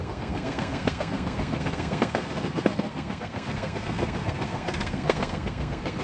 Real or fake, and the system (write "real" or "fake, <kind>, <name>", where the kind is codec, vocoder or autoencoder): fake, codec, SNAC